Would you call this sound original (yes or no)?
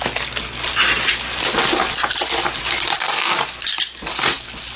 yes